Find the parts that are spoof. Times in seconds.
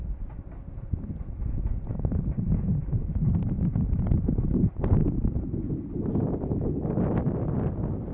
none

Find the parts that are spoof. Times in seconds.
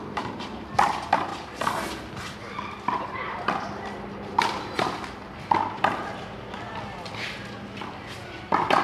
0.0-8.8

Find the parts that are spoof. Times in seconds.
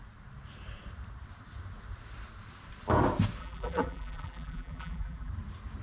3.4-5.3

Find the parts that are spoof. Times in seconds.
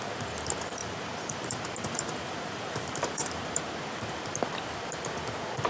0.8-4.2